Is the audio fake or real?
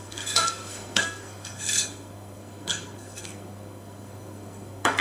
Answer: fake